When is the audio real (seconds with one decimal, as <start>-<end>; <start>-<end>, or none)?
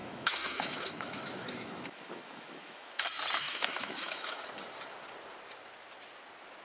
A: 3.0-3.4; 4.4-6.6